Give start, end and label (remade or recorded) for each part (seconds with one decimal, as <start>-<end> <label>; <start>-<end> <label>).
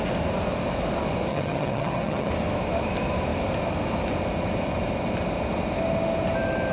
0.0-1.3 recorded; 1.3-2.3 remade; 2.3-6.7 recorded